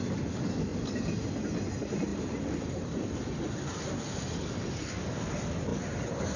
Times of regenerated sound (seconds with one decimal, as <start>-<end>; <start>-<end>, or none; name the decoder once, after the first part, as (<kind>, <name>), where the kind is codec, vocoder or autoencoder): 0.7-1.7 (vocoder, BigVGAN v2); 2.1-3.2